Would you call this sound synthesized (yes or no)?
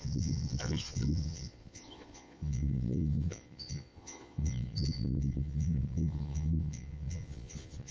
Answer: yes